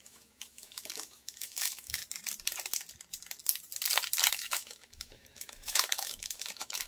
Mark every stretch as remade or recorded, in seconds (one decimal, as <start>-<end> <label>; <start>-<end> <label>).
0.0-2.0 remade; 2.0-4.3 recorded; 4.3-6.9 remade